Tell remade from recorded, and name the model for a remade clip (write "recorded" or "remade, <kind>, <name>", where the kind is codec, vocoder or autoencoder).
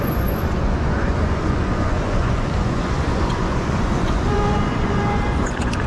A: remade, vocoder, Vocos